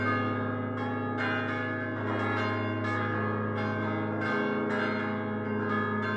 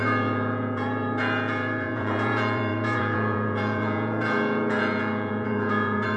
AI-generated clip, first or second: second